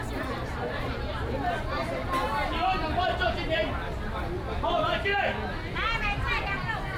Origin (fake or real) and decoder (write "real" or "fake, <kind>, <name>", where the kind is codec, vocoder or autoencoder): real